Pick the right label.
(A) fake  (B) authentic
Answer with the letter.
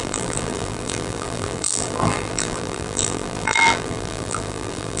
A